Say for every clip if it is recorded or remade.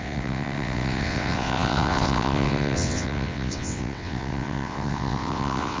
remade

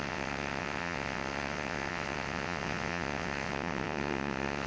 remade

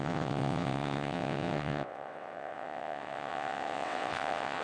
remade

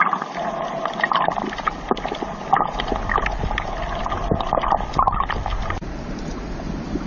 recorded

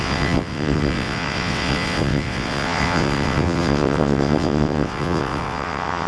remade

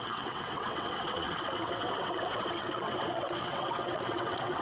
remade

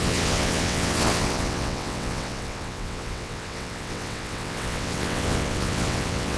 remade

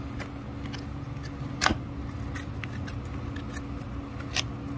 recorded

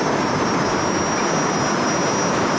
recorded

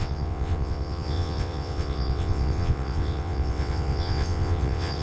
remade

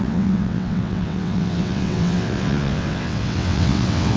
remade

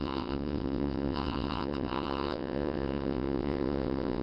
remade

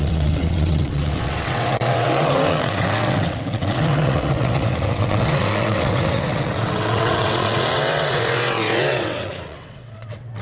remade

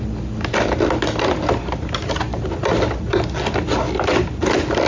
recorded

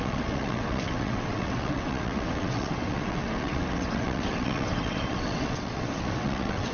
remade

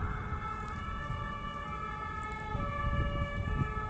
recorded